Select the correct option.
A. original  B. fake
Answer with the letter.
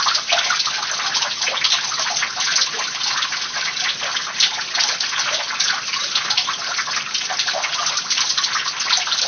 A